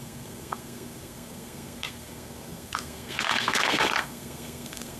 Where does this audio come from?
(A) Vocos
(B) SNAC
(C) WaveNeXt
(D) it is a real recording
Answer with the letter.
B